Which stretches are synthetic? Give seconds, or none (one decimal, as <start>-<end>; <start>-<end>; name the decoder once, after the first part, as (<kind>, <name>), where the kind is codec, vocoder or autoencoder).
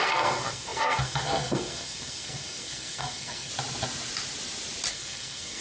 0.0-3.5 (codec, SNAC); 4.9-5.6